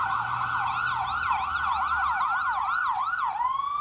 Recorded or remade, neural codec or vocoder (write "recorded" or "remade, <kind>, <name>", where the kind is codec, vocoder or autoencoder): recorded